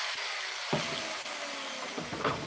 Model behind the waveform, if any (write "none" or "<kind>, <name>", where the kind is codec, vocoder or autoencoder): none